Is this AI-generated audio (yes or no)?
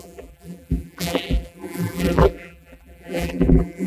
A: yes